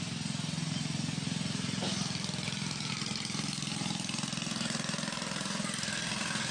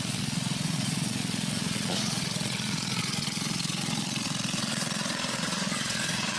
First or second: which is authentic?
first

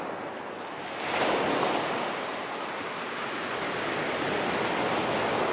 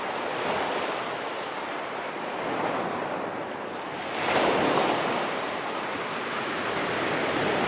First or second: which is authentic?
first